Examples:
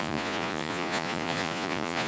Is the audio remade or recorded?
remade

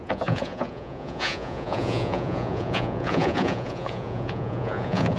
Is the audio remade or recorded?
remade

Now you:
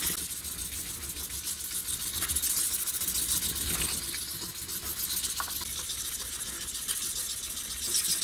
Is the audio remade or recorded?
recorded